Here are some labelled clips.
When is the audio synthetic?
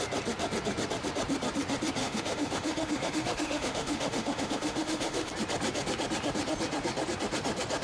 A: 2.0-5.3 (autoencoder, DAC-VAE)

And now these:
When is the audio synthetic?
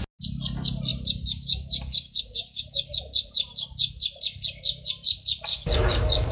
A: 0.9-2.9 (codec, DAC); 5.5-6.3